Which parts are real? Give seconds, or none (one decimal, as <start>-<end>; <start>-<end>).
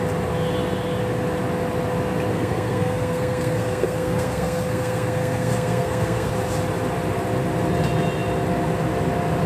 0.0-2.3; 6.3-9.5